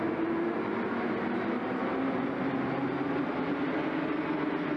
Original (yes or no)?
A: yes